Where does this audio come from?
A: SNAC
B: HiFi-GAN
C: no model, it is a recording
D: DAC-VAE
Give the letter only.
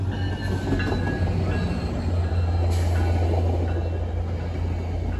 C